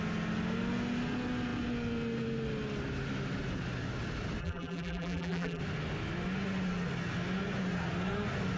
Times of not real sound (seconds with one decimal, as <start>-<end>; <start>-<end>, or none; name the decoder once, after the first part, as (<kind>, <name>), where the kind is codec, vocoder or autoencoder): 4.4-5.6 (vocoder, BigVGAN v2)